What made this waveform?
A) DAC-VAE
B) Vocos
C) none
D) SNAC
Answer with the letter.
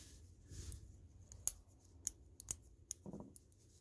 C